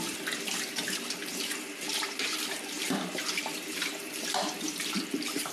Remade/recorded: remade